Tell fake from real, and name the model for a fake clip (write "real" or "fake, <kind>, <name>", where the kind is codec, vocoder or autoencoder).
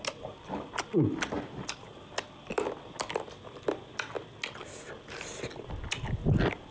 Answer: real